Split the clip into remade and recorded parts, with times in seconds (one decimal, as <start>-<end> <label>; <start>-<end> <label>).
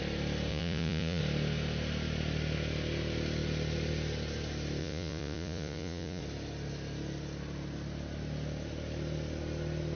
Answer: 0.0-0.5 recorded; 0.5-1.2 remade; 1.2-4.8 recorded; 4.8-6.2 remade; 6.2-10.0 recorded